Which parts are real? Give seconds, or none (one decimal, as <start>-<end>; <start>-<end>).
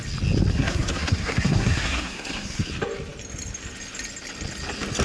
0.0-0.5; 2.7-5.0